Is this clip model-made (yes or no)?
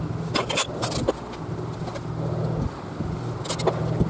no